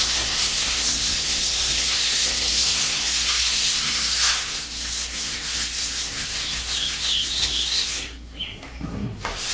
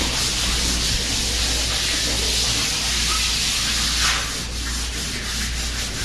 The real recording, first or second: second